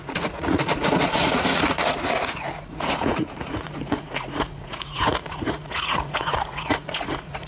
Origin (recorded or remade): remade